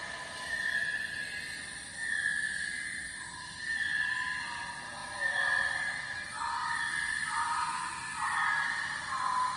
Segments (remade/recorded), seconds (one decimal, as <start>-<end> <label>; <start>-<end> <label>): 0.0-7.2 recorded; 7.2-7.9 remade; 7.9-9.6 recorded

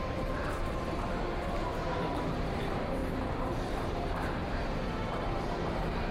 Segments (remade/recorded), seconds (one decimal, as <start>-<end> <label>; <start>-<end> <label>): 0.0-3.0 remade; 3.0-3.7 recorded; 3.7-6.1 remade

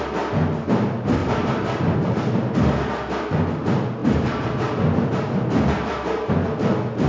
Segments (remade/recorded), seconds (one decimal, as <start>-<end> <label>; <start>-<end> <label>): 0.0-1.2 recorded; 1.2-2.1 remade; 2.1-4.0 recorded; 4.0-4.6 remade; 4.6-7.1 recorded

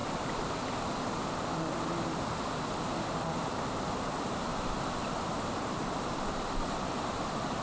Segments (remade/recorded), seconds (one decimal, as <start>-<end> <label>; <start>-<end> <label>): 0.0-1.6 remade; 1.6-4.5 recorded; 4.5-6.3 remade; 6.3-7.6 recorded